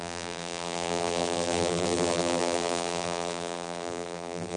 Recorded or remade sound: remade